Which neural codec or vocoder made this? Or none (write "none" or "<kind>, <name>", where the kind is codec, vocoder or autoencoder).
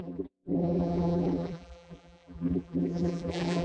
vocoder, BigVGAN v2